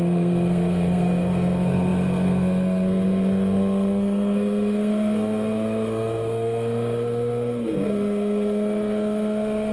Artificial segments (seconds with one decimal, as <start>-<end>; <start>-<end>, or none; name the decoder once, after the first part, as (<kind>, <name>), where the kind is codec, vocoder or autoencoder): 0.0-9.7 (codec, SNAC)